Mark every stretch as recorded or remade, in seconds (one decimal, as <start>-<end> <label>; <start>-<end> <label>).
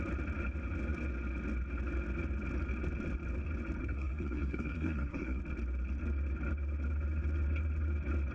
0.0-3.8 recorded; 3.8-5.4 remade; 5.4-8.3 recorded